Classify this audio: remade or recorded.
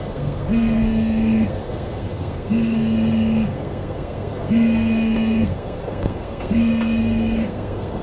remade